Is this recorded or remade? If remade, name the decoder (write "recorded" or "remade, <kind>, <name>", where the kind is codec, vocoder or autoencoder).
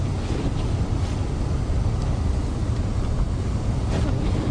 recorded